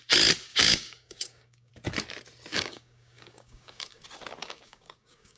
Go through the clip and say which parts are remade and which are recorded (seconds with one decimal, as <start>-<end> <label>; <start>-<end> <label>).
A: 0.0-0.5 recorded; 0.5-1.7 remade; 1.7-2.5 recorded; 2.5-4.0 remade; 4.0-4.4 recorded; 4.4-5.4 remade